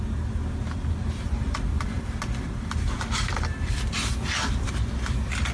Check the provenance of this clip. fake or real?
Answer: real